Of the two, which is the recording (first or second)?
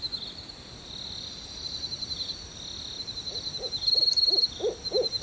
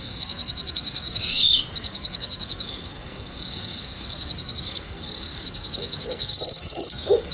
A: first